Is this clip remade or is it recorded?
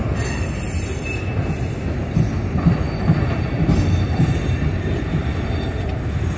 recorded